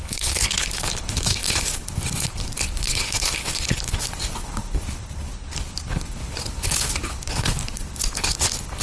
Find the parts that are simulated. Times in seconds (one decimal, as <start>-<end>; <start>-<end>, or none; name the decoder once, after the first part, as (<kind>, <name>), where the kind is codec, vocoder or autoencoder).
0.0-8.8 (codec, HILCodec)